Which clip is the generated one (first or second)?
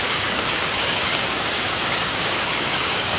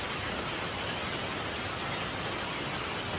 first